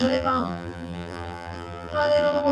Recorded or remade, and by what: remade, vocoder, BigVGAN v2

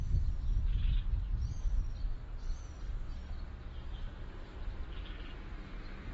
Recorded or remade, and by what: recorded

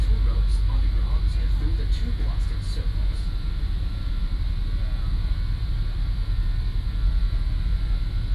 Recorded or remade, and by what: recorded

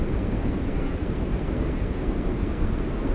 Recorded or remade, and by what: remade, codec, SNAC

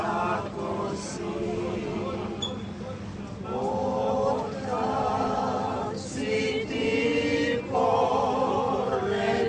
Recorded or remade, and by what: remade, vocoder, BigVGAN v2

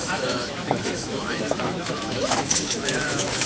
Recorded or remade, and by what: remade, autoencoder, DAC-VAE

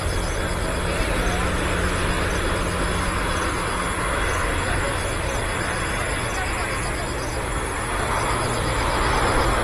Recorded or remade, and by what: recorded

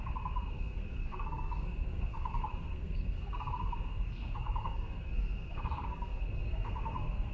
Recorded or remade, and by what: remade, codec, SNAC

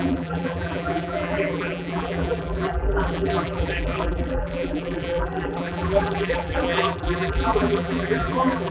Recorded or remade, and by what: remade, vocoder, BigVGAN v2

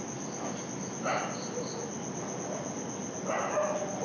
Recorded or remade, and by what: recorded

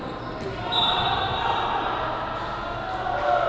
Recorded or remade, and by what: recorded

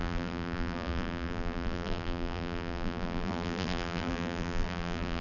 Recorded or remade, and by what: remade, vocoder, BigVGAN v2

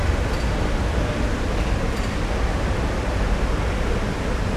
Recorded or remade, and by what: recorded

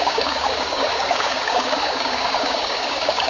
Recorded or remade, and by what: remade, codec, DAC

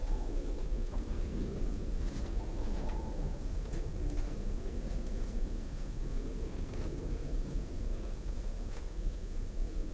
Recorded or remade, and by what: remade, codec, SNAC